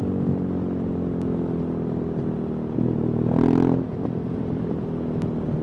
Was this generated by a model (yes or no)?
no